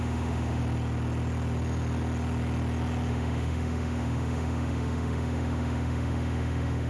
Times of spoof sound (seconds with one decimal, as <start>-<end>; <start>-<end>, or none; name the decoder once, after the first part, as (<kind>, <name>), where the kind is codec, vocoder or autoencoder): 0.0-0.6 (autoencoder, DAC-VAE); 3.1-6.9